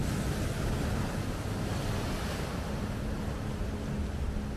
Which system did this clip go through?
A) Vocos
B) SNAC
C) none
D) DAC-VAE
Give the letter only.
C